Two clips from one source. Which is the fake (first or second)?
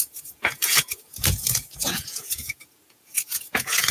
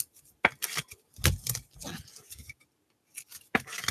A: first